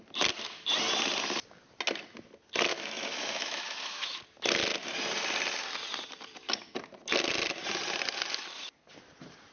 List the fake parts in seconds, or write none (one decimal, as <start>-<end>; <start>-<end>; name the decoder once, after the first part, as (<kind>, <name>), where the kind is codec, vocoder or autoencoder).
2.7-4.2 (autoencoder, DAC-VAE)